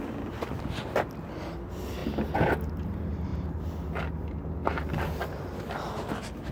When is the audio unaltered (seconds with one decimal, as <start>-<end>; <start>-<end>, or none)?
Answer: 0.0-6.5